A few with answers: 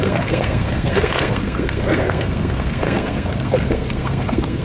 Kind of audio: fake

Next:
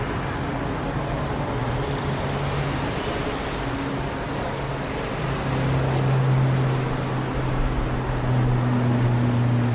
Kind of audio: real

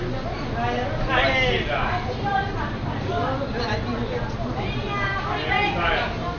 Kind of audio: real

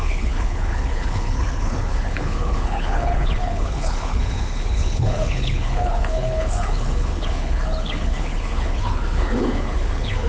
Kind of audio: fake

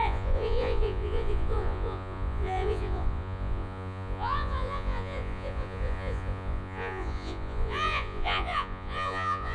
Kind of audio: fake